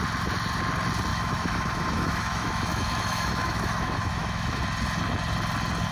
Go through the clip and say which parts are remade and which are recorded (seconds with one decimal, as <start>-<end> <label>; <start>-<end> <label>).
0.0-1.1 recorded; 1.1-4.6 remade; 4.6-5.9 recorded